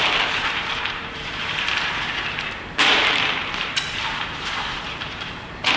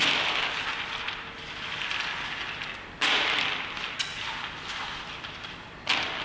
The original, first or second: second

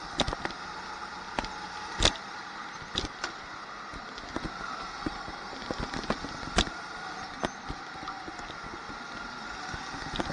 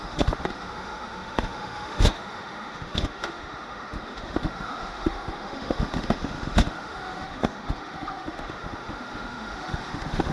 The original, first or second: first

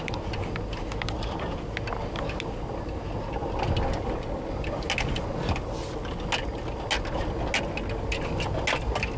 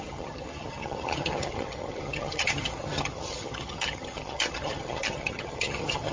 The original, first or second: first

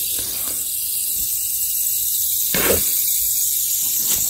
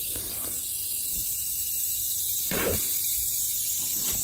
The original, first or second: first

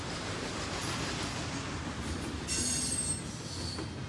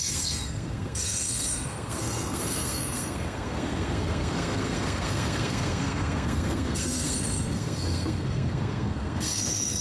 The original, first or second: first